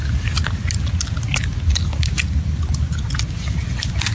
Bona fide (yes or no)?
yes